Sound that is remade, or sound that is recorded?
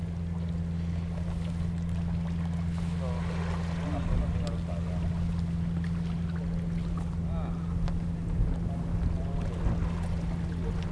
recorded